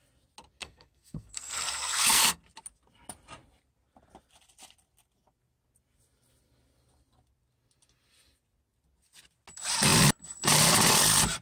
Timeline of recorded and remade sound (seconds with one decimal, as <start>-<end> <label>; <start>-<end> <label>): 0.0-0.6 recorded; 0.6-2.4 remade; 2.4-11.4 recorded